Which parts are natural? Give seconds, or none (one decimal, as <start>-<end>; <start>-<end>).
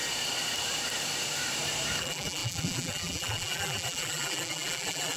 0.0-2.0